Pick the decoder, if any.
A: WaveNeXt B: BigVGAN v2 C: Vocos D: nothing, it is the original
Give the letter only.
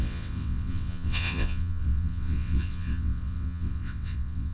A